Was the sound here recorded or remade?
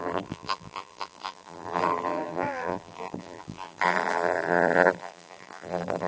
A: remade